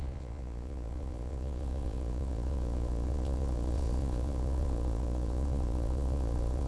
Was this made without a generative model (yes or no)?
no